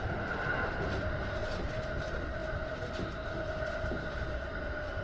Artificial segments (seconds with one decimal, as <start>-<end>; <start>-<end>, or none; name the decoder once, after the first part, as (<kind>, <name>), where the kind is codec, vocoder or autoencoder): none

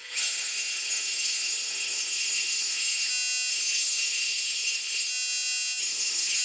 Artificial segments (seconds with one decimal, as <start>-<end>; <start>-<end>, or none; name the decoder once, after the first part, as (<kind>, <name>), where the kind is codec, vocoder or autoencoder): 0.0-3.1 (codec, HILCodec); 3.5-5.1; 5.8-6.4

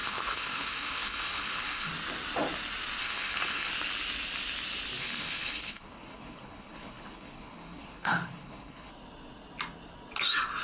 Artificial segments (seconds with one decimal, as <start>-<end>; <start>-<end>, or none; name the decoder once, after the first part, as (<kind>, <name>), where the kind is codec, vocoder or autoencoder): 0.0-1.9 (codec, HILCodec); 3.0-3.7; 5.0-8.9

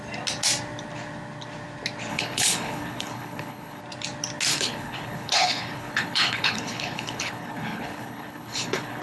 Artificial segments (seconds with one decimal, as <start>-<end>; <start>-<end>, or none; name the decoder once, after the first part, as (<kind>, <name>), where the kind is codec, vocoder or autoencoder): 2.1-3.8 (codec, HILCodec); 4.5-9.0

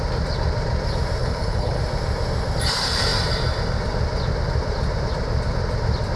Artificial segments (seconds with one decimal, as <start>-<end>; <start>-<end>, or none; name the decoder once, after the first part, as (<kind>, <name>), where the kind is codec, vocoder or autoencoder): 1.2-1.8 (codec, HILCodec)

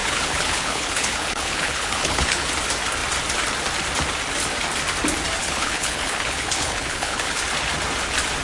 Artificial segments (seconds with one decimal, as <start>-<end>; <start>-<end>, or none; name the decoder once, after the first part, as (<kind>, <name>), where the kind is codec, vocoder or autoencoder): 0.0-2.5 (codec, HILCodec); 5.4-7.4